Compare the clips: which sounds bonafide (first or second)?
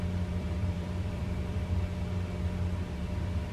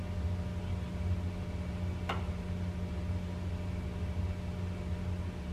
second